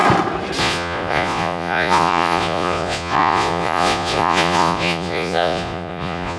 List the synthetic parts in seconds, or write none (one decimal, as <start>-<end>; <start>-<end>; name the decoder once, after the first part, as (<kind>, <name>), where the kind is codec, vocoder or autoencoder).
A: 0.6-6.4 (vocoder, Vocos)